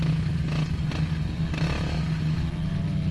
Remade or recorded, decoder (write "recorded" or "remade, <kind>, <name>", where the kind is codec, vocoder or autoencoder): recorded